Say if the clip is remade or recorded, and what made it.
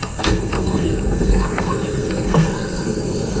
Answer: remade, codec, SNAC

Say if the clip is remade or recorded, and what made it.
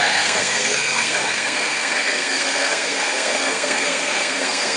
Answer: remade, codec, SNAC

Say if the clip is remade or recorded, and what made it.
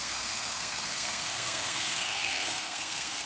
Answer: remade, codec, SNAC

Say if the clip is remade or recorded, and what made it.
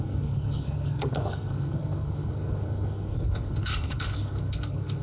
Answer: remade, codec, SNAC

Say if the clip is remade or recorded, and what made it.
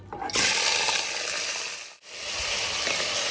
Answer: recorded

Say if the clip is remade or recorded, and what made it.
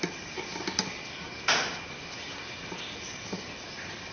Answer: recorded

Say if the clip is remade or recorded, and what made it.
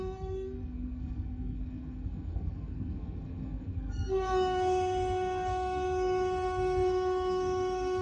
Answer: remade, codec, SNAC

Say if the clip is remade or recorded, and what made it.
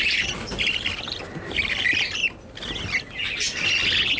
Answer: recorded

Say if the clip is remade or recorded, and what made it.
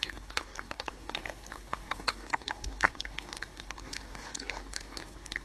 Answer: remade, codec, SNAC